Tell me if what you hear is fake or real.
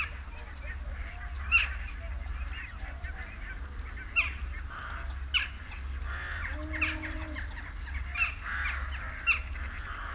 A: real